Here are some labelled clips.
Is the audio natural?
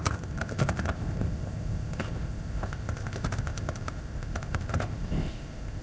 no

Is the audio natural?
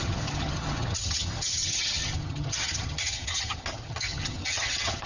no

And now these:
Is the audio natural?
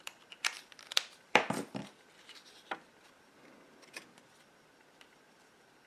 no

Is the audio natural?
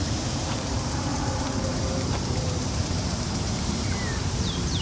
no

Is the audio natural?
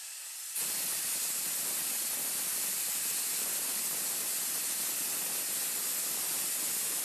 yes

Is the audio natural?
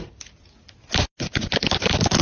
yes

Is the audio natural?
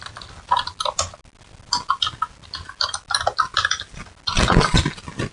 yes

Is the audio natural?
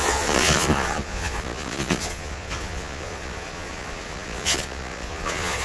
no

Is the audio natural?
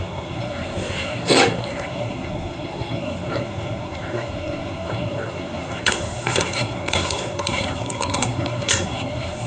no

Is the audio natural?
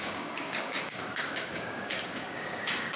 no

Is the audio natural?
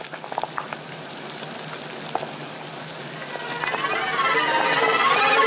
yes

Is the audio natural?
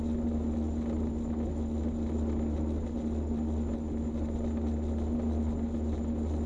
yes